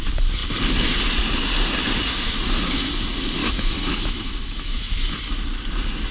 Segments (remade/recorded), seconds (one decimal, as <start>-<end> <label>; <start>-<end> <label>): 0.0-3.4 recorded; 3.4-5.1 remade; 5.1-6.1 recorded

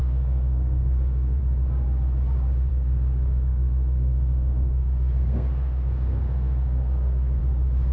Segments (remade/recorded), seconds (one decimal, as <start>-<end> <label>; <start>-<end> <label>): 0.0-1.4 remade; 1.4-2.7 recorded; 2.7-7.4 remade; 7.4-7.9 recorded